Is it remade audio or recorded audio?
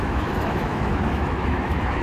remade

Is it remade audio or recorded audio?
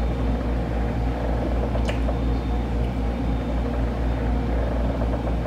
recorded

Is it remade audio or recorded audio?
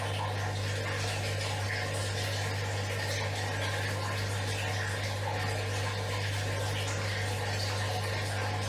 recorded